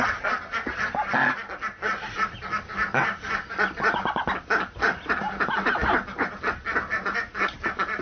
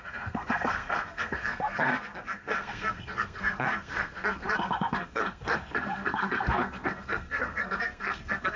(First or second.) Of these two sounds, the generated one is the second